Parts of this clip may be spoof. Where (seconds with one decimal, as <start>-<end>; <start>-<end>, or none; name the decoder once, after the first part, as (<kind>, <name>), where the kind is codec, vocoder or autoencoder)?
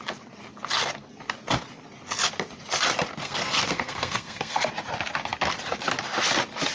3.2-4.7 (codec, SNAC)